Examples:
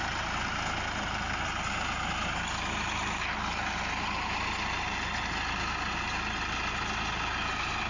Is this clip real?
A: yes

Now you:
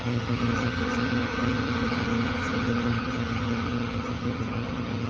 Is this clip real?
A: no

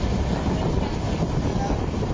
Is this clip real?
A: yes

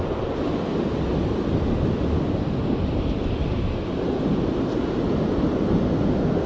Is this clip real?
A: yes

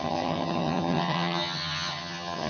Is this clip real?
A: no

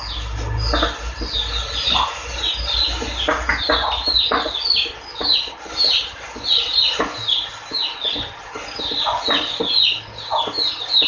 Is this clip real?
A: yes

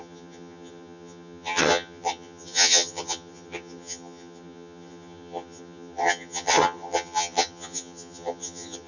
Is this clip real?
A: no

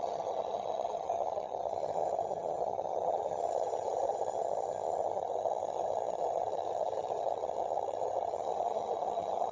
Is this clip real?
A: no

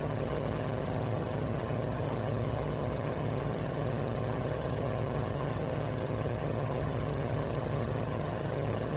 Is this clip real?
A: no